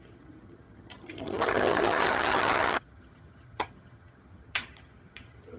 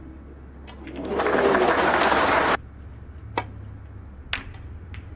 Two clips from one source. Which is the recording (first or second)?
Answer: second